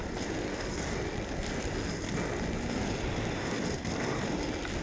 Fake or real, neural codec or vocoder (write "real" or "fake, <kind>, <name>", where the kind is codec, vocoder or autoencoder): real